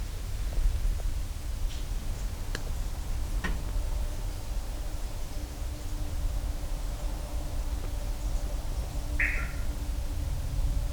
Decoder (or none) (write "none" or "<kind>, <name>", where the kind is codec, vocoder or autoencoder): none